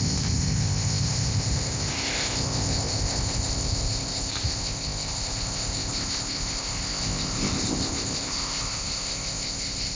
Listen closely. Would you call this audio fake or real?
fake